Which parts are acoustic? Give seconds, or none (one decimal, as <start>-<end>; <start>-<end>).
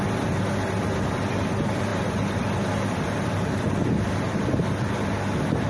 0.0-1.9; 3.7-5.7